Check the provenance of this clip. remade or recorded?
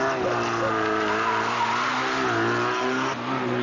recorded